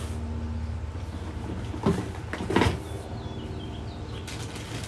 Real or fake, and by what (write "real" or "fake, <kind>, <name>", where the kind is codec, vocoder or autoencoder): real